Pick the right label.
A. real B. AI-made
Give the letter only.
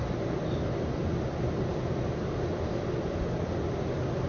A